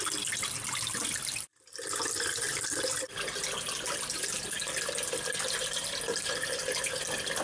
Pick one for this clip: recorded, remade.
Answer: recorded